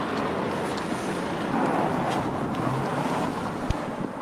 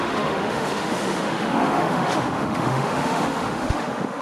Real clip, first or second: first